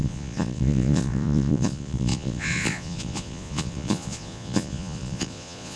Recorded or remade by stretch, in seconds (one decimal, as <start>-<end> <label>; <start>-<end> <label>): 0.0-5.8 remade